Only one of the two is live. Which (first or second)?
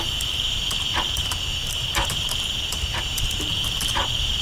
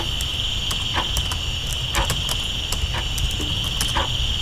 second